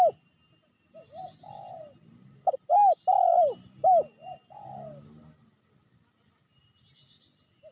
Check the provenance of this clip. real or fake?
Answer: real